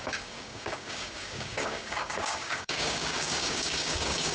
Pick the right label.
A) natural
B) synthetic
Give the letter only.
B